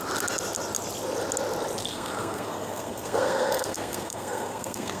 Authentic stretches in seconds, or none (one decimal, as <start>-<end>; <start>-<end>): 0.0-1.9